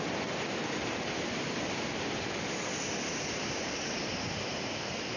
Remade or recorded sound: recorded